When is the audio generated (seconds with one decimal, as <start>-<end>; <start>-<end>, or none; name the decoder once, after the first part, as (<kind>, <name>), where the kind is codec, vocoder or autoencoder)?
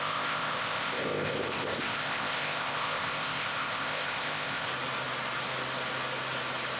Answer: 0.0-4.7 (codec, ZipCodec)